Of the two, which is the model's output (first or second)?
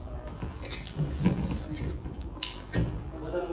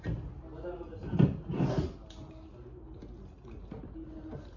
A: first